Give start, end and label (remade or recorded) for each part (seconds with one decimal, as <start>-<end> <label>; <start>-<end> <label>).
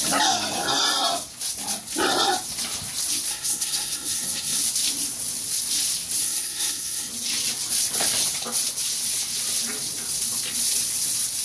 0.0-3.3 recorded; 3.3-4.6 remade; 4.6-6.2 recorded; 6.2-7.1 remade; 7.1-11.4 recorded